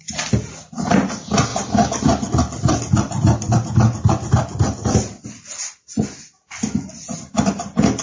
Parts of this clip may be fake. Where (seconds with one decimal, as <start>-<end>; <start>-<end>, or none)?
1.5-3.5; 4.5-6.1